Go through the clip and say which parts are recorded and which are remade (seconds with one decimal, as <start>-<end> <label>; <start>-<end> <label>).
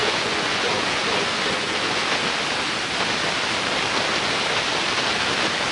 0.0-2.0 remade; 2.0-5.7 recorded